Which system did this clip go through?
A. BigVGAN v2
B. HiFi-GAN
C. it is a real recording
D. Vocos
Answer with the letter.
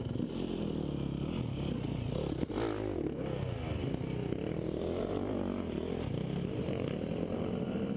C